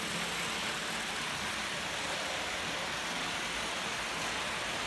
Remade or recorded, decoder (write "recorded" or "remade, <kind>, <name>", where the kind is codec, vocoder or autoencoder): recorded